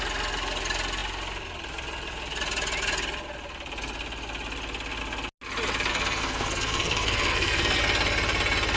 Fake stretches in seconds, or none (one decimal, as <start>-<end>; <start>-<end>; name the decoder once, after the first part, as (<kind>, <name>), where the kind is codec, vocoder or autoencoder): 5.9-7.8 (codec, SNAC)